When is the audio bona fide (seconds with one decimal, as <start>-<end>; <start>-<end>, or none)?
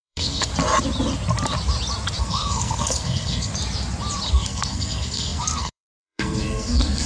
0.5-2.2; 3.5-4.3